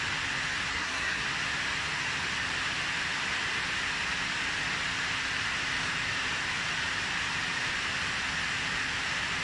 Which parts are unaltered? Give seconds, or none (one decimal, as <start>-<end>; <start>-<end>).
0.0-0.7; 1.2-9.4